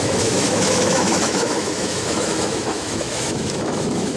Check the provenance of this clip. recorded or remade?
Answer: remade